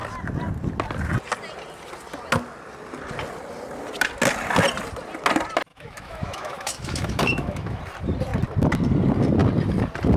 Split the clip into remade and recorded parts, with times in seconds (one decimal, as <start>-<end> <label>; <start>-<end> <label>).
0.0-5.7 recorded; 5.7-7.8 remade; 7.8-10.2 recorded